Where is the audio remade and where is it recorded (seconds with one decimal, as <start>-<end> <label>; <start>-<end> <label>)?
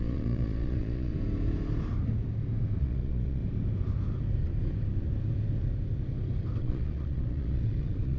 0.0-1.1 remade; 1.1-2.8 recorded; 2.8-3.4 remade; 3.4-6.6 recorded; 6.6-8.2 remade